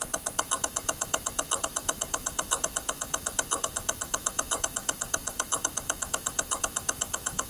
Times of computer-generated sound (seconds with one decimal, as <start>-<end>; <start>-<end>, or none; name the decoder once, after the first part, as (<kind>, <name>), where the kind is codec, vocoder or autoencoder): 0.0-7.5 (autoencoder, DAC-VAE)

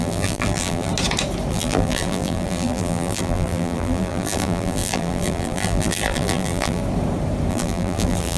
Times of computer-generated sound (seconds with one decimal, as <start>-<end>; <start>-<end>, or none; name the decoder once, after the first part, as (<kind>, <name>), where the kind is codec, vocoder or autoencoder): 0.0-0.9 (vocoder, BigVGAN v2); 1.5-6.8; 7.5-8.4

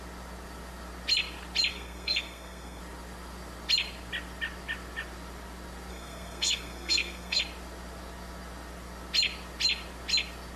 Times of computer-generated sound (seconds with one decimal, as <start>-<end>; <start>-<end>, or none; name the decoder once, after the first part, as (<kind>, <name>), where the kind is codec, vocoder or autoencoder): 1.7-2.8 (codec, SNAC); 5.9-7.4

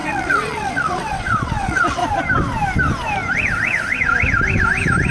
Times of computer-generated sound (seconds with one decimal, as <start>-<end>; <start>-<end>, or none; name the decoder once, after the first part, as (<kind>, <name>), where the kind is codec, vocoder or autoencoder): 0.0-2.0 (vocoder, WaveNeXt)